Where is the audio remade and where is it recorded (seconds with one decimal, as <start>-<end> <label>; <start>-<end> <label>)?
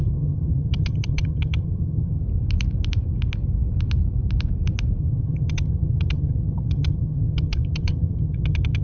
0.0-2.2 remade; 2.2-5.0 recorded; 5.0-8.8 remade